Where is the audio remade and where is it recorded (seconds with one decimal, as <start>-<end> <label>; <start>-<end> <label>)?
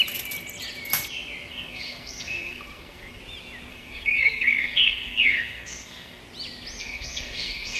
0.0-1.5 recorded; 1.5-3.2 remade; 3.2-3.7 recorded; 3.7-6.2 remade; 6.2-6.8 recorded; 6.8-7.8 remade